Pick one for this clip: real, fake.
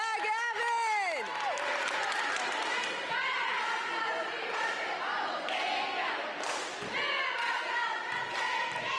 real